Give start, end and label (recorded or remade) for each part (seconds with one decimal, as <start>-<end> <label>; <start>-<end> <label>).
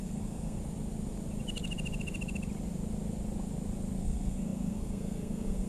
0.0-0.6 remade; 0.6-4.0 recorded; 4.0-5.7 remade